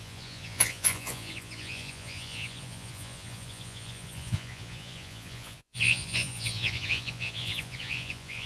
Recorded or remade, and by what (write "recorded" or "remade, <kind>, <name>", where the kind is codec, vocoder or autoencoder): remade, vocoder, Vocos